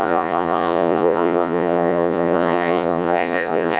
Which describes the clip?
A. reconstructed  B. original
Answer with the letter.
A